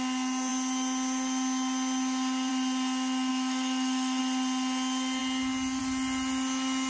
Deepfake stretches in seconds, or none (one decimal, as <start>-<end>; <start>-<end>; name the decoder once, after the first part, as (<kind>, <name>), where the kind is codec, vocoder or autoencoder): 3.3-4.2 (autoencoder, DAC-VAE)